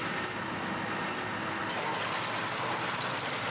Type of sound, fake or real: real